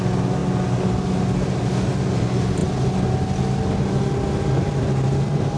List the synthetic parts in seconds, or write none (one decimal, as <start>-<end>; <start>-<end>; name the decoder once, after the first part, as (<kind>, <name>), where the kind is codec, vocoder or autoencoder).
none